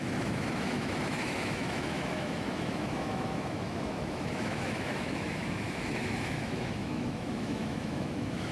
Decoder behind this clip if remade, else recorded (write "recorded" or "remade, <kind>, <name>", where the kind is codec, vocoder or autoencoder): remade, autoencoder, DAC-VAE